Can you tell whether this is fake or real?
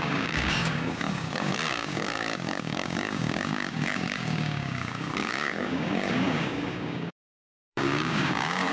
fake